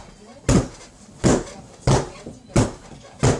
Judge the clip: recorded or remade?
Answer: recorded